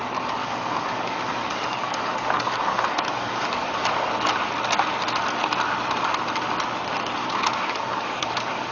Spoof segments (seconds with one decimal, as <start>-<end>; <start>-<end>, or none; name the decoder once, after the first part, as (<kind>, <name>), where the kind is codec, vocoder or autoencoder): 0.4-3.9 (codec, DAC); 7.2-8.7